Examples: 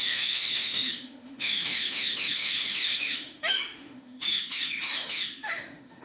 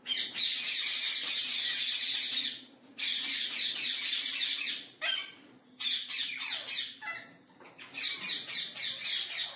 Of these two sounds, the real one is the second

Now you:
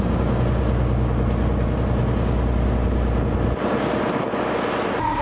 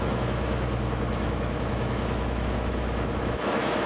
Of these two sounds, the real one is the first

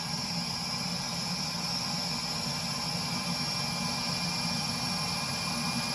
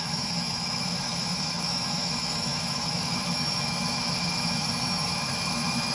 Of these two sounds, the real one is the first